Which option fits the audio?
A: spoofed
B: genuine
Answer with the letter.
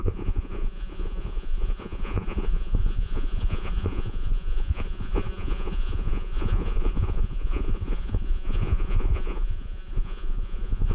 A